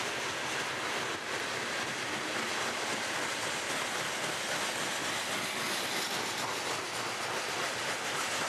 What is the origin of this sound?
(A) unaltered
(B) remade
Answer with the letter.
A